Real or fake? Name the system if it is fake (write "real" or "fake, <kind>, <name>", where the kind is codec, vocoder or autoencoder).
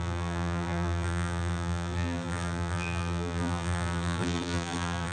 fake, vocoder, BigVGAN v2